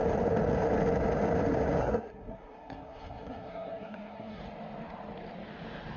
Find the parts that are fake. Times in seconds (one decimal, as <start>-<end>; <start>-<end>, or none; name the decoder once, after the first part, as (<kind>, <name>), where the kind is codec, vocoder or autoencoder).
1.8-4.4 (codec, SNAC)